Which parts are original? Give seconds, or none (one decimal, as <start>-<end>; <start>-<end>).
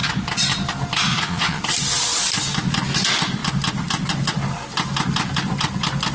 0.0-1.1; 1.6-6.1